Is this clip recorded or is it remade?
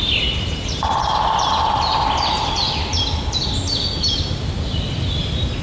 recorded